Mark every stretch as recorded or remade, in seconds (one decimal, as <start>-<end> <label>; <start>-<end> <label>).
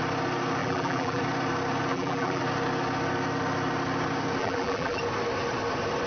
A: 0.0-0.6 recorded; 0.6-1.2 remade; 1.2-1.9 recorded; 1.9-2.4 remade; 2.4-4.4 recorded; 4.4-5.0 remade; 5.0-6.1 recorded